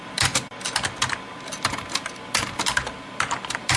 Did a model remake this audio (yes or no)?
no